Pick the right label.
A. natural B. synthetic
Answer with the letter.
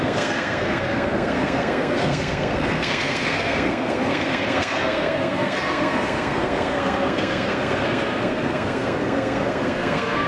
B